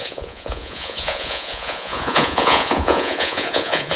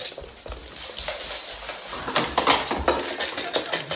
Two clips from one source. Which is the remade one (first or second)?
first